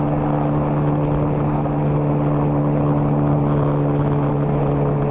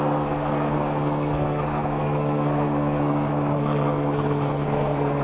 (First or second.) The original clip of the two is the first